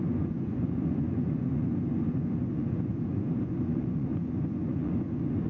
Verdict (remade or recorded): remade